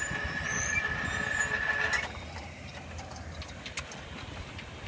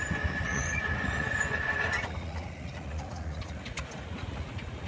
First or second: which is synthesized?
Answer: second